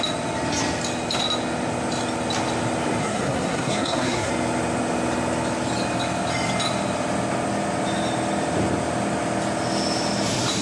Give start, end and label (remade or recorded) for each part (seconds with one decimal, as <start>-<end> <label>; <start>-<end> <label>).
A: 0.0-3.0 recorded; 3.0-4.3 remade; 4.3-10.6 recorded